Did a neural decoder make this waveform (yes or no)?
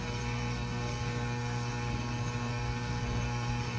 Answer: yes